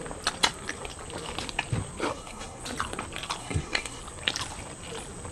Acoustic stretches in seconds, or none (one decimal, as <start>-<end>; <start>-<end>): 0.0-2.1; 2.6-3.4; 4.0-5.3